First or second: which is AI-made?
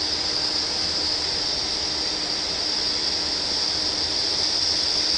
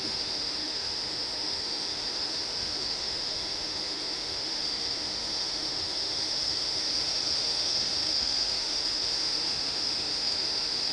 second